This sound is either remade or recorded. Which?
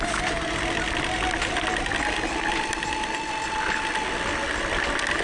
recorded